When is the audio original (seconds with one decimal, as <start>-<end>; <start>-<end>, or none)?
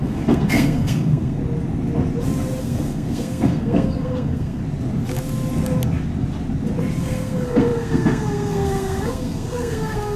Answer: 1.4-2.6; 4.6-7.0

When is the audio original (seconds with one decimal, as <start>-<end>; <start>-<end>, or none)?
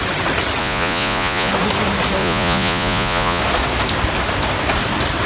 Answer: 0.0-0.6; 1.5-2.2; 3.4-5.3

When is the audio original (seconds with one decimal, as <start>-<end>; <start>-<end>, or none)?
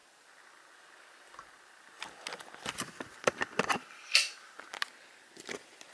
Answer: 0.0-5.9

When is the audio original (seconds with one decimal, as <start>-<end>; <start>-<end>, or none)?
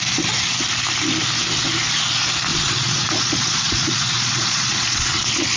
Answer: 0.0-2.5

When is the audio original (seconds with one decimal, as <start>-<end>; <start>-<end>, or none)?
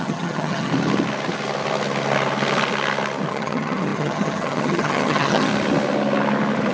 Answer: 0.7-3.3; 5.5-6.7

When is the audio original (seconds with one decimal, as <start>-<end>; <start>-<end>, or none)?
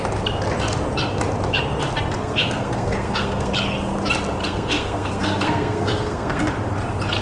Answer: 0.0-2.2; 3.5-4.4; 6.4-7.2